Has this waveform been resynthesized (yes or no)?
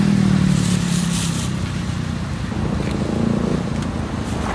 no